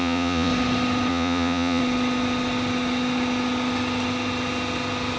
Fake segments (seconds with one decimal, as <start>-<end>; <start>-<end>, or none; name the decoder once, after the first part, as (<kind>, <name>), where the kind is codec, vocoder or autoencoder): 0.0-0.5 (vocoder, Vocos); 1.1-1.8